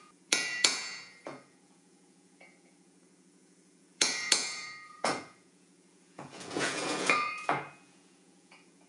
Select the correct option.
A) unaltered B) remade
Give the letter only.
B